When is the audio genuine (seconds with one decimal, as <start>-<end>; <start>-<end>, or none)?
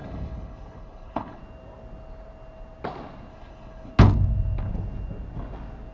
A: 1.4-3.3; 3.9-5.9